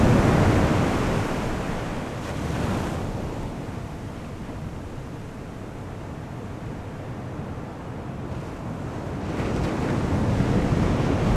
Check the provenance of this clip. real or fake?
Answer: real